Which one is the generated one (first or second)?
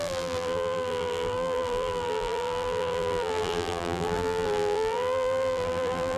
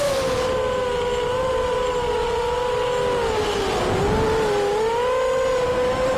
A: first